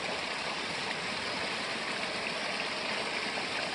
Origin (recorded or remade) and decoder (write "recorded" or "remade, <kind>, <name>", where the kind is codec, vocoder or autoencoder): recorded